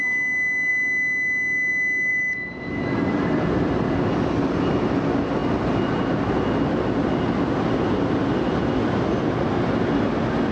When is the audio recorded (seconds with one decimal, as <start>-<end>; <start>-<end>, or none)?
0.0-2.1; 4.9-10.5